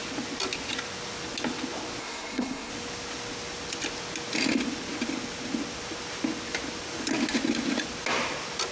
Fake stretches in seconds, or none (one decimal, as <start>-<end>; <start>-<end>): 2.0-2.7